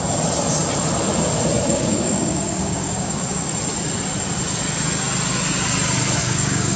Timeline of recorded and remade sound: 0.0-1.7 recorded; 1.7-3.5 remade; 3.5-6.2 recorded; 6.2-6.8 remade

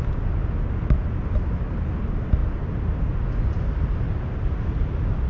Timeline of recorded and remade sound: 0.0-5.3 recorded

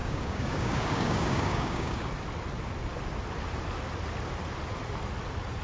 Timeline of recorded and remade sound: 0.0-2.1 remade; 2.1-5.6 recorded

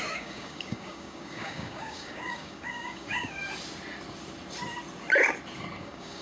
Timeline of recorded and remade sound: 0.0-3.4 remade; 3.4-5.8 recorded; 5.8-6.2 remade